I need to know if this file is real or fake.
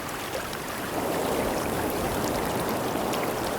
fake